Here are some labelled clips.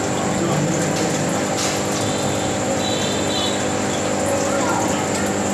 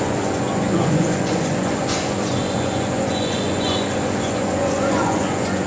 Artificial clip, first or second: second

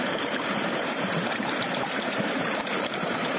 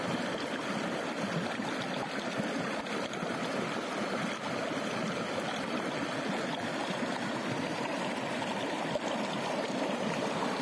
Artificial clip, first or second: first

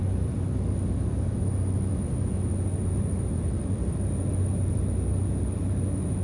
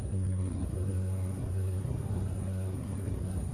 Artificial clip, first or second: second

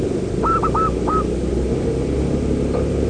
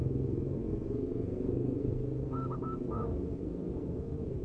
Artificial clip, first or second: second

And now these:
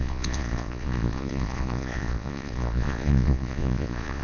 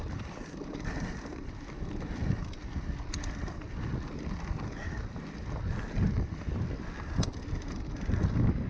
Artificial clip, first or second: first